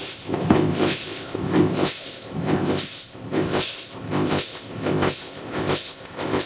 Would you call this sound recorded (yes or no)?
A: no